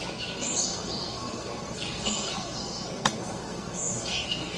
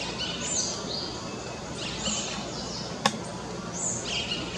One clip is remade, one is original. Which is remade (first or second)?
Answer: first